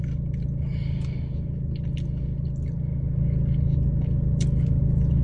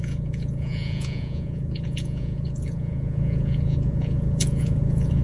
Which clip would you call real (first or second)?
first